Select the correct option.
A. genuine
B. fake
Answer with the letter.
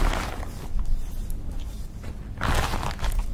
A